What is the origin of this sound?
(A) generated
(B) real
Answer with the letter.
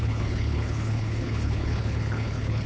A